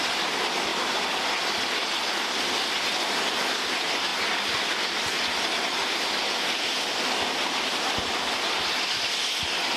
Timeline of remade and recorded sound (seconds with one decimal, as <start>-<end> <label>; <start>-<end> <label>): 0.0-9.8 recorded

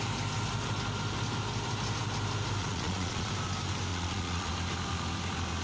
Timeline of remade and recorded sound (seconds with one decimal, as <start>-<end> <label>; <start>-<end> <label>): 0.0-2.6 recorded; 2.6-3.3 remade; 3.3-3.9 recorded; 3.9-4.5 remade; 4.5-5.6 recorded

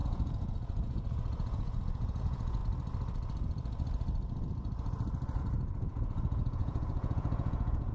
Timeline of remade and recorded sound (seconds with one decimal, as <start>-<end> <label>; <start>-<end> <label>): 0.0-2.6 remade; 2.6-5.4 recorded; 5.4-7.9 remade

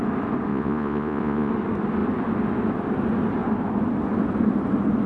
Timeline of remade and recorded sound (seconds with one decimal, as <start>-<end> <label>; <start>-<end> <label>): 0.0-0.5 recorded; 0.5-1.5 remade; 1.5-5.1 recorded

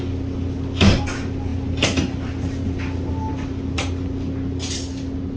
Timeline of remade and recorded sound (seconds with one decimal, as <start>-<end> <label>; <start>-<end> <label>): 0.0-5.4 recorded

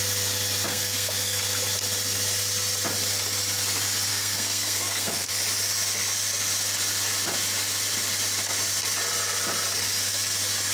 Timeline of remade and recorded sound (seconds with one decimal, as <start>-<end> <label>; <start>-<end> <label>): 0.0-0.7 recorded; 0.7-1.4 remade; 1.4-4.1 recorded; 4.1-5.3 remade; 5.3-10.7 recorded

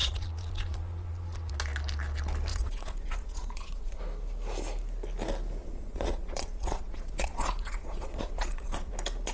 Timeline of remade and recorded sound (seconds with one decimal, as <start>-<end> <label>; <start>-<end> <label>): 0.0-1.5 remade; 1.5-2.5 recorded; 2.5-4.0 remade; 4.0-5.6 recorded; 5.6-8.9 remade; 8.9-9.3 recorded